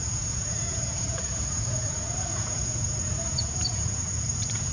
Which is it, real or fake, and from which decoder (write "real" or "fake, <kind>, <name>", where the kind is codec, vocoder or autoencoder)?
fake, vocoder, Vocos